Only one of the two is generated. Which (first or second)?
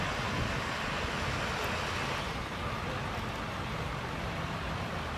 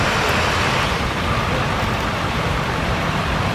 second